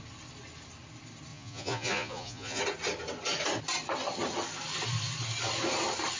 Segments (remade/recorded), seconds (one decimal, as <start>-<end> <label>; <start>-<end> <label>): 0.0-1.3 recorded; 1.3-2.6 remade; 2.6-6.2 recorded